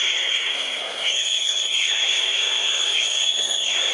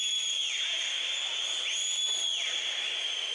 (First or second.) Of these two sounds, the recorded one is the second